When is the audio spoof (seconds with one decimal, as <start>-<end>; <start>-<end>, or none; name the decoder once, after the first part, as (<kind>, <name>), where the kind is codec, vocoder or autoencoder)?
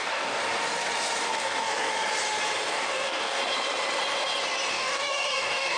0.0-0.4 (codec, DAC); 1.2-1.9; 2.7-3.4; 4.7-5.8